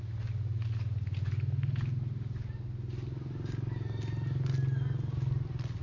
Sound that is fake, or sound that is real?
real